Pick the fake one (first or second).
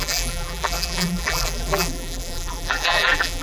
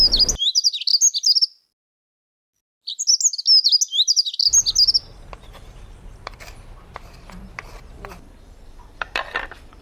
first